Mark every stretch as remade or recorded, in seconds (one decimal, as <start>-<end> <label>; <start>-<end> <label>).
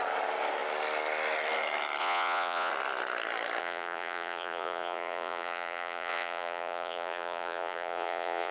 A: 0.0-2.0 recorded; 2.0-2.7 remade; 2.7-3.6 recorded; 3.6-8.5 remade